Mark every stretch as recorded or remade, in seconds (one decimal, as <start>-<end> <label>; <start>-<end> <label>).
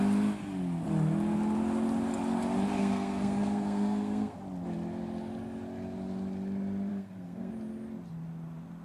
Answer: 0.0-2.8 recorded; 2.8-4.4 remade; 4.4-6.9 recorded; 6.9-7.5 remade; 7.5-8.8 recorded